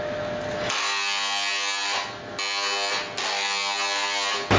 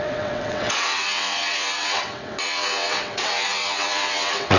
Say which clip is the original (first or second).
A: first